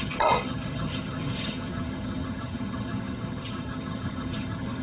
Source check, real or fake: fake